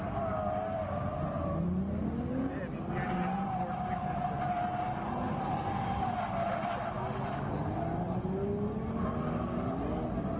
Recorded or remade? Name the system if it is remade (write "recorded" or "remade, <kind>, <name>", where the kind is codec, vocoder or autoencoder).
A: recorded